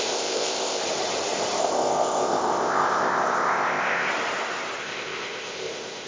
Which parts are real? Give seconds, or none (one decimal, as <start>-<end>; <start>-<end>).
0.8-1.6; 4.1-4.8